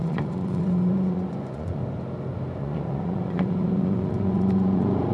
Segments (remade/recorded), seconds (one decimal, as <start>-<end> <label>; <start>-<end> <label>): 0.0-1.8 remade; 1.8-2.6 recorded; 2.6-5.1 remade